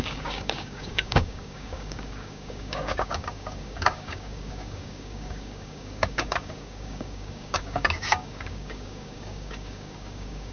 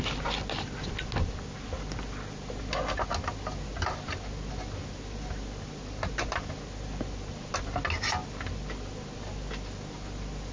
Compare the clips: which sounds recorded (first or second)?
second